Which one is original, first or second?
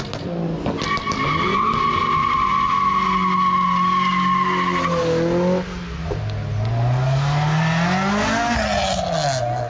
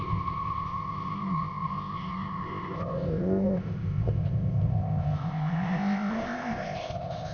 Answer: first